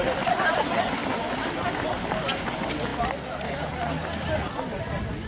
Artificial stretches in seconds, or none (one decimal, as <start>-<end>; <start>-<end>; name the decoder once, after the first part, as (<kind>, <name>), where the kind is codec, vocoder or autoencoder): 1.0-1.5 (vocoder, BigVGAN v2)